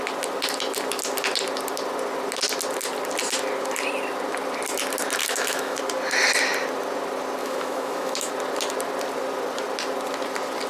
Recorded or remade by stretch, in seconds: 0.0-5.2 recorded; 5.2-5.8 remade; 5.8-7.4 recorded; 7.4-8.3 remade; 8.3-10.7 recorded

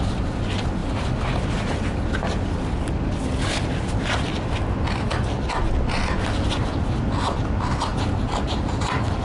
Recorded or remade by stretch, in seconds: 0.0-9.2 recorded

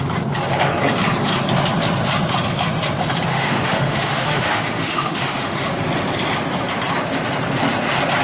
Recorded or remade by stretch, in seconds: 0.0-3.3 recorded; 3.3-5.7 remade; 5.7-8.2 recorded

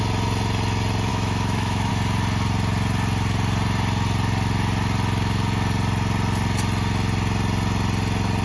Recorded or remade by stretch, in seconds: 0.0-1.1 recorded; 1.1-1.9 remade; 1.9-8.4 recorded

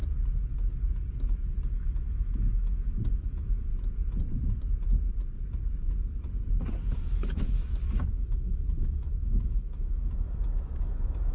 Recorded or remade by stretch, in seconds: 0.0-1.5 recorded; 1.5-3.7 remade; 3.7-7.0 recorded; 7.0-11.3 remade